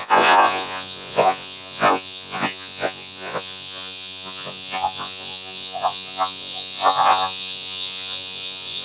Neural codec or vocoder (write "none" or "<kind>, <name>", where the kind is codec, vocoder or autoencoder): vocoder, Vocos